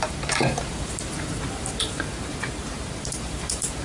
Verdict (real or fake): fake